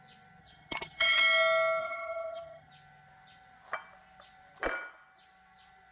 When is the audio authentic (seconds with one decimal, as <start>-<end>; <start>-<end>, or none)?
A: 0.0-0.4; 1.2-1.8; 2.7-5.9